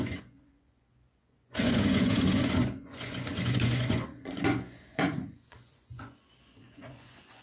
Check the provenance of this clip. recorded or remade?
remade